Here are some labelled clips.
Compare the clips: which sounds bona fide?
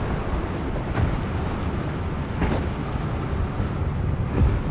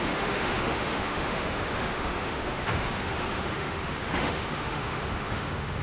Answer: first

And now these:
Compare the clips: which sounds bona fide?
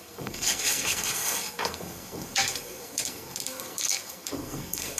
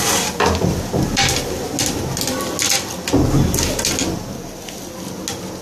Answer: second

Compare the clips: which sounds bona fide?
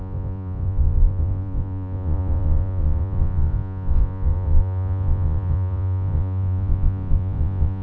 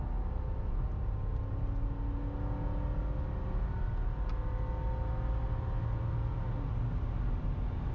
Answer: second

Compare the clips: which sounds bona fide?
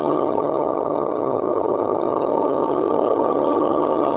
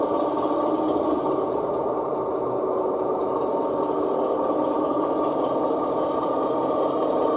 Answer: second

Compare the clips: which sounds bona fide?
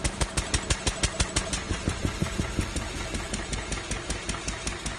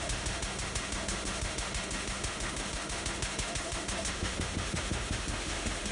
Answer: first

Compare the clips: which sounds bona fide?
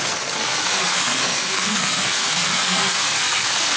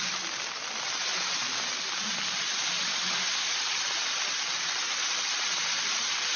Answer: second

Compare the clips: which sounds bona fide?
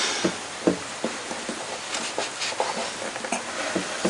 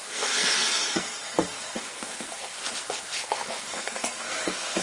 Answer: first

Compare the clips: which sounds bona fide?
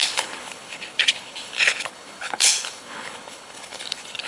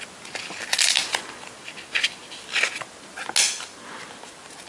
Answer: second